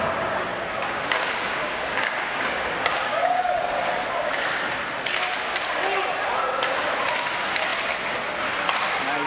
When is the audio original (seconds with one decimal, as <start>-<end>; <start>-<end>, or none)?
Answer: 0.0-0.5; 3.6-9.3